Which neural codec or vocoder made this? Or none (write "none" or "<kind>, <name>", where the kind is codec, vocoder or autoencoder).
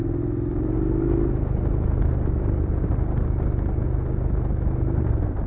none